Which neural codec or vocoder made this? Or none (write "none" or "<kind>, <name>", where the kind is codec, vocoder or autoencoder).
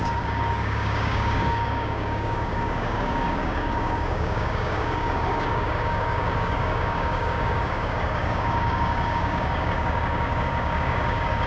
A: codec, DAC